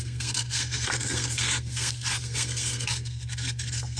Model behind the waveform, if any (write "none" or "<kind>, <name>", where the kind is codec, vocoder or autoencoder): codec, SNAC